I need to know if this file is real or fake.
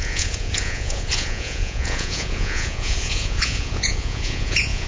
fake